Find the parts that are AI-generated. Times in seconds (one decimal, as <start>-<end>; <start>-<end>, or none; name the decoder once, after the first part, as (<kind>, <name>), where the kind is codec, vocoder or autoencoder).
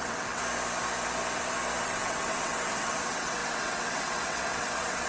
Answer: 0.0-0.4 (vocoder, WaveNeXt); 1.8-5.1